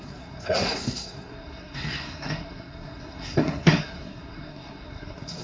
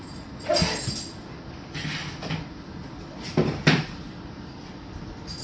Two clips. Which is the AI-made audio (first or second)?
first